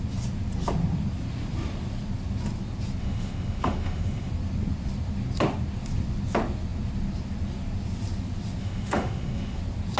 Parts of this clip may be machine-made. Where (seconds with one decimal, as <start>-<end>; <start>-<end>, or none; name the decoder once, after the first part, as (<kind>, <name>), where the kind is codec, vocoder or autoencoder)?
3.0-4.3 (autoencoder, DAC-VAE); 8.6-9.6

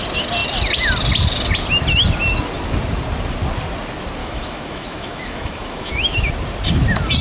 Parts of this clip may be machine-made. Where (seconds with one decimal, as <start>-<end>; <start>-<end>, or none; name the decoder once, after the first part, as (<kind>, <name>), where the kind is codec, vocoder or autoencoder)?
4.2-6.3 (autoencoder, DAC-VAE)

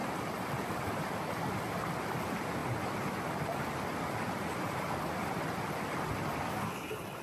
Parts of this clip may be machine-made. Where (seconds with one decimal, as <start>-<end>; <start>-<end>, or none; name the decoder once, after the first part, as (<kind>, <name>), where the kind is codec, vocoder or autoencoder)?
none

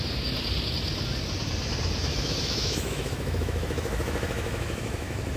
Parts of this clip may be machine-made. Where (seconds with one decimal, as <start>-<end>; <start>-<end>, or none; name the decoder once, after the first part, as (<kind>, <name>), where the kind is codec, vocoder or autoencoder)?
2.1-5.4 (autoencoder, DAC-VAE)

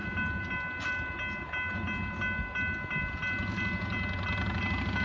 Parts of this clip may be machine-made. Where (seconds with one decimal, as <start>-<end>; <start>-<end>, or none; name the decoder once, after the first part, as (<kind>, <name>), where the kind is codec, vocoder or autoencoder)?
none

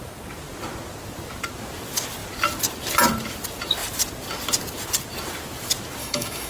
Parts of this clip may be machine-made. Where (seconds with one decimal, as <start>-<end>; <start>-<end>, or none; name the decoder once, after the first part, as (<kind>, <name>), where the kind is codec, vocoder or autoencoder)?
6.0-6.5 (autoencoder, DAC-VAE)

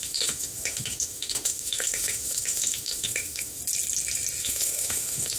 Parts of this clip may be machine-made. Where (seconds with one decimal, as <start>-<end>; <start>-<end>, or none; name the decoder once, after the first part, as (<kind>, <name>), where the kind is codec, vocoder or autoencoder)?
0.0-3.6 (autoencoder, DAC-VAE); 4.4-5.4